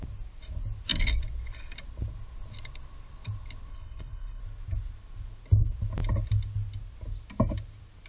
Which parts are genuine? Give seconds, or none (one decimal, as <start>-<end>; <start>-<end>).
0.0-3.7; 4.4-8.1